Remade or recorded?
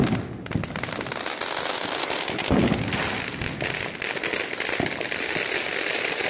recorded